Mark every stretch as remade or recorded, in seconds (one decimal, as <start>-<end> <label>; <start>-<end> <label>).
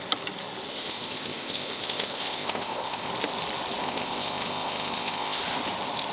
0.0-0.7 recorded; 0.7-3.1 remade; 3.1-3.8 recorded; 3.8-5.4 remade; 5.4-6.1 recorded